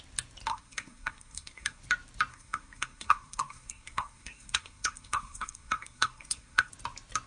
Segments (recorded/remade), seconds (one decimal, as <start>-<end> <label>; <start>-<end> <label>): 0.0-0.5 recorded; 0.5-1.8 remade; 1.8-2.3 recorded; 2.3-6.7 remade; 6.7-7.3 recorded